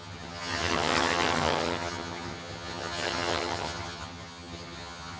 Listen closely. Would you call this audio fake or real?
fake